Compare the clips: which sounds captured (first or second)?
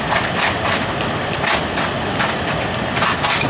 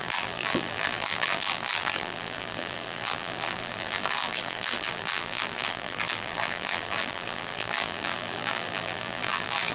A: first